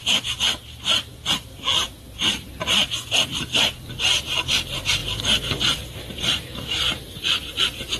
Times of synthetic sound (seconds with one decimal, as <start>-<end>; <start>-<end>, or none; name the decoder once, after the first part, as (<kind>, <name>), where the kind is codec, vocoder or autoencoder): 5.0-7.5 (vocoder, BigVGAN v2)